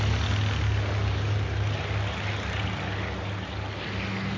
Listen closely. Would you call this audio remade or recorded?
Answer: recorded